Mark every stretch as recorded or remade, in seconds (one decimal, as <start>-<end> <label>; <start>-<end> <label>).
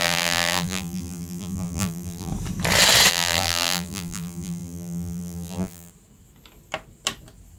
0.0-2.3 remade; 2.3-3.1 recorded; 3.1-5.9 remade; 5.9-7.6 recorded